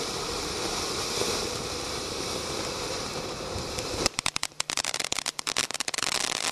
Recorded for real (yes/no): no